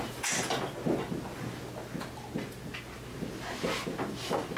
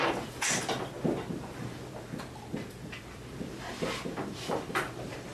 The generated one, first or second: second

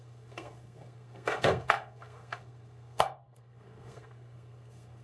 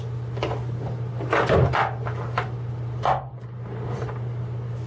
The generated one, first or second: first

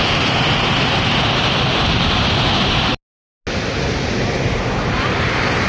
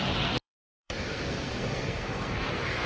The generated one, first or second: second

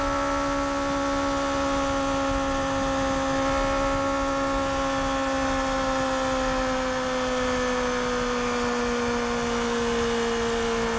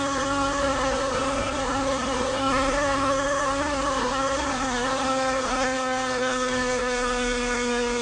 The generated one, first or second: second